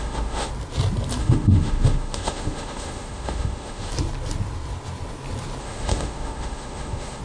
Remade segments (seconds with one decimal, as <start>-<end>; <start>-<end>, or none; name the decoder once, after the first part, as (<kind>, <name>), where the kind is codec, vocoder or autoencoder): 0.0-0.5 (autoencoder, DAC-VAE); 1.2-3.9; 5.6-7.2